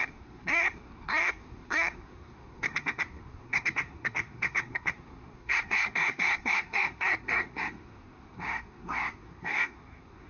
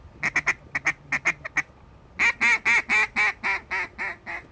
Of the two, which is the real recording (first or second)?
second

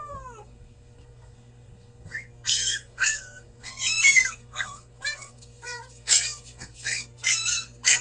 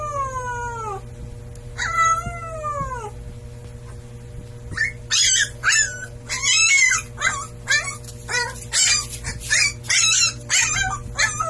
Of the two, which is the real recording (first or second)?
second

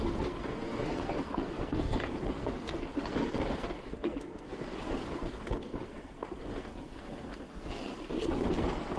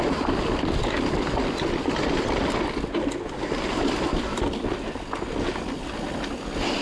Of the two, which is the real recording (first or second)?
second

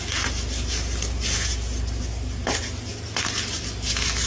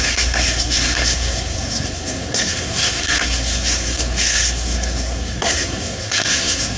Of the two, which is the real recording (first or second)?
first